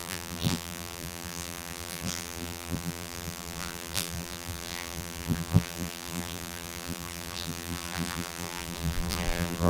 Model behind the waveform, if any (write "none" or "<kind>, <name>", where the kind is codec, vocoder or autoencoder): vocoder, BigVGAN v2